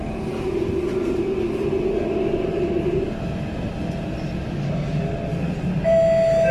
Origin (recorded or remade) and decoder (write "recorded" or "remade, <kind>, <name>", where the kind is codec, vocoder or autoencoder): recorded